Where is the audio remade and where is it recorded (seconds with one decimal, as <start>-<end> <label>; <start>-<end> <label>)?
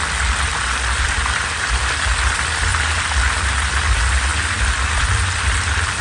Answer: 0.0-0.5 recorded; 0.5-1.7 remade; 1.7-2.7 recorded; 2.7-3.7 remade; 3.7-4.3 recorded; 4.3-6.0 remade